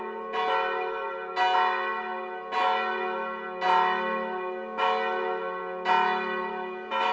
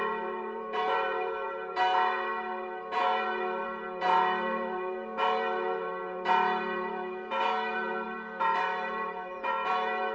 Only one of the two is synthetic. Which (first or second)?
second